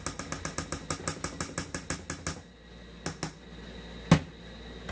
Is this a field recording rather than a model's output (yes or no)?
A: yes